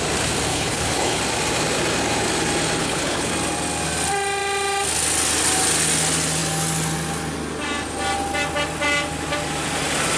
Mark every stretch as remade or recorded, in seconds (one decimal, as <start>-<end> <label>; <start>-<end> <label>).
0.0-0.5 recorded; 0.5-1.2 remade; 1.2-2.8 recorded; 2.8-3.3 remade; 3.3-10.2 recorded